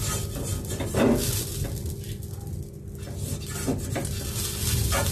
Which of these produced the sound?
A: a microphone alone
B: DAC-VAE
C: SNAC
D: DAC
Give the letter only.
A